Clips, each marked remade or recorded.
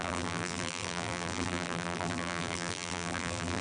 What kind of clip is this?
remade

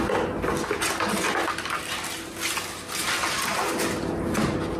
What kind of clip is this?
recorded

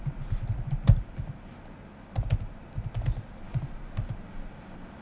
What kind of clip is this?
recorded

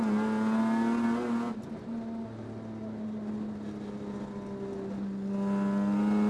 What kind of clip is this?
recorded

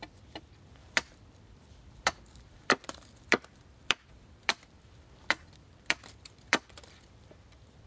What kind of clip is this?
remade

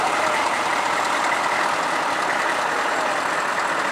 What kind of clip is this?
remade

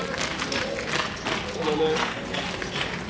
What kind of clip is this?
recorded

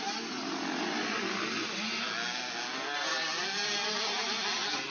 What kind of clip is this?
recorded